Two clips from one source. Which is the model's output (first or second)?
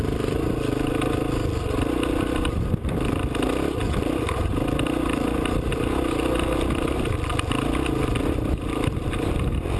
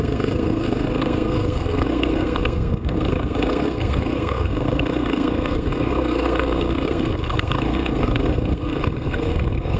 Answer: second